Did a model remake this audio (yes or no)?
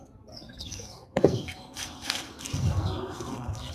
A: yes